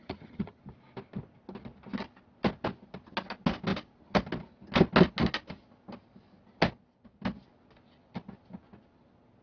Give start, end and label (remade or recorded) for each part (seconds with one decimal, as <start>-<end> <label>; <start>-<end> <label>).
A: 0.0-0.6 remade; 0.6-9.4 recorded